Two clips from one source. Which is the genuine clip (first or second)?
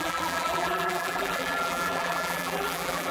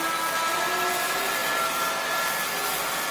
second